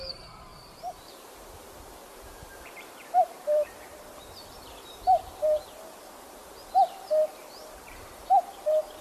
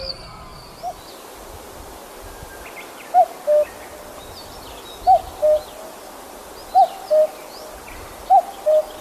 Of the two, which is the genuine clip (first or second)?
second